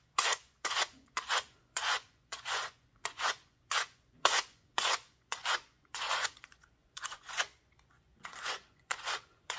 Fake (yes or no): yes